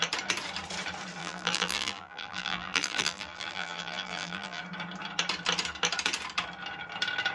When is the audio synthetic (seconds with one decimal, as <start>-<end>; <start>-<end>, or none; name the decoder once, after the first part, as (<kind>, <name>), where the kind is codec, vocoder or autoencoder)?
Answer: 1.2-4.6 (vocoder, BigVGAN v2)